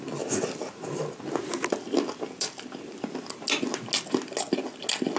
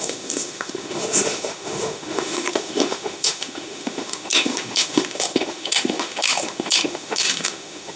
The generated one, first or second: second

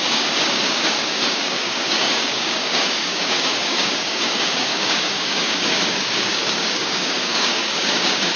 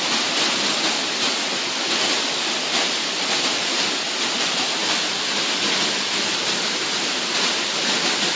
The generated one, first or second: first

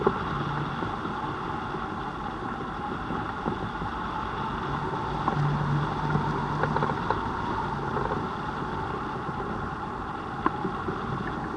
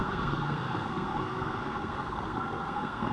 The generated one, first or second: second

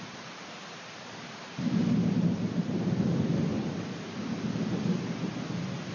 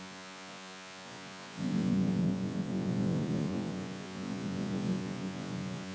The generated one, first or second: second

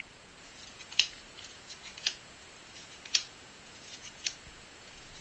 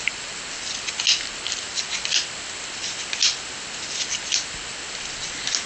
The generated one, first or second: first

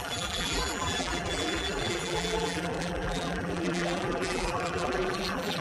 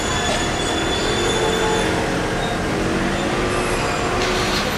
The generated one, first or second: first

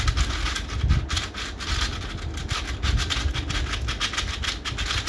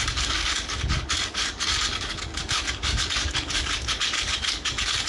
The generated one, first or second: second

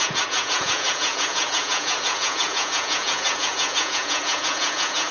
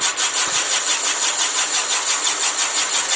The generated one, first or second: first